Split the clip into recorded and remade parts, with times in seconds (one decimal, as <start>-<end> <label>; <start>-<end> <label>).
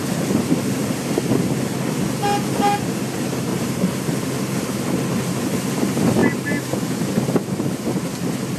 0.0-3.5 recorded; 3.5-4.1 remade; 4.1-8.6 recorded